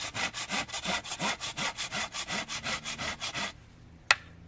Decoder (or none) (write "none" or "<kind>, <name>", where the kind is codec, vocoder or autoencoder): none